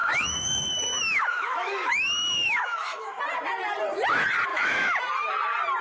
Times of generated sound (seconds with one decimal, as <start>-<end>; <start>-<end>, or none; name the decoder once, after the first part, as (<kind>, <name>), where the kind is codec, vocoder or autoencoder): 0.0-3.2 (autoencoder, DAC-VAE); 4.5-5.0